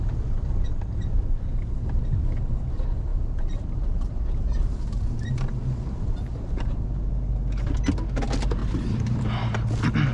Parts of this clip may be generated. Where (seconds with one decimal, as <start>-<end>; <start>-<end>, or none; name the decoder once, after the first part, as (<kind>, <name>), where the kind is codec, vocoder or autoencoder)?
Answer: 3.1-6.8 (vocoder, BigVGAN v2); 8.6-9.2